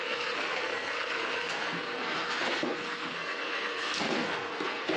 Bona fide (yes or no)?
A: no